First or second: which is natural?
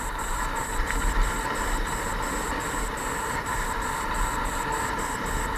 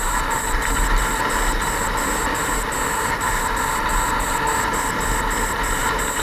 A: second